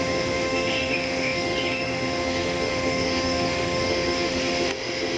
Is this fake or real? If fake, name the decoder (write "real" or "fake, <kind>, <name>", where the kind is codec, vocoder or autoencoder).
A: fake, autoencoder, DAC-VAE